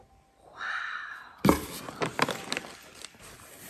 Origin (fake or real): real